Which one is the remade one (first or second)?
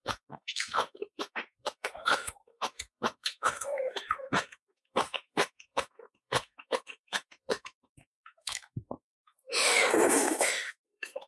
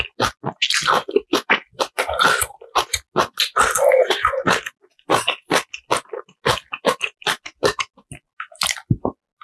first